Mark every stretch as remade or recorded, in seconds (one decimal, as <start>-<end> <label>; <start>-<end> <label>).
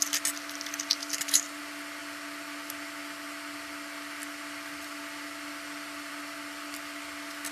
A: 0.0-1.0 recorded; 1.0-1.6 remade; 1.6-7.5 recorded